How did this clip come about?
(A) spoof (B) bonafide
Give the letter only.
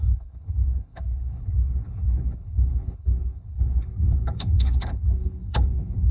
A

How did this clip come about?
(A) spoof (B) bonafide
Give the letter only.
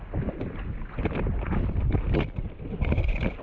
B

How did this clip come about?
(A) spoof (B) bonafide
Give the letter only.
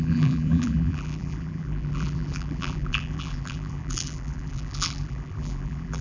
A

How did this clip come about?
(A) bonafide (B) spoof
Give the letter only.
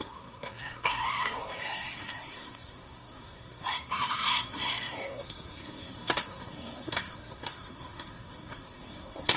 B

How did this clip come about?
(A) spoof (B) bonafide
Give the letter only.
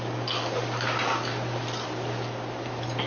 B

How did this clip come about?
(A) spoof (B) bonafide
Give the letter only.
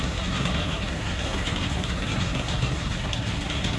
A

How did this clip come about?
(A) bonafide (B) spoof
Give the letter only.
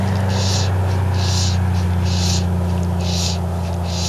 A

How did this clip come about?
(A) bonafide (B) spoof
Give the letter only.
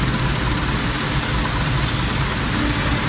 A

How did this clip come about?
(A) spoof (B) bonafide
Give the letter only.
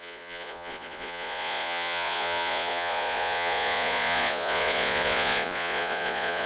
A